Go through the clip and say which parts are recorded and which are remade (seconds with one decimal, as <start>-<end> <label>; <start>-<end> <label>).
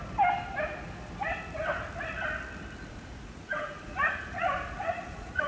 0.0-2.9 recorded; 2.9-5.5 remade